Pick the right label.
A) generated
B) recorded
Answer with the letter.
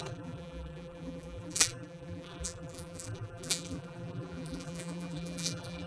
A